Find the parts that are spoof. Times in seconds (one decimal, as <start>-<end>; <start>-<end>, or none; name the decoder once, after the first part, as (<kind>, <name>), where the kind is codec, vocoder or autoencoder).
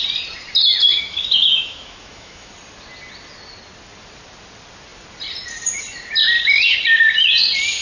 0.8-2.5 (autoencoder, DAC-VAE)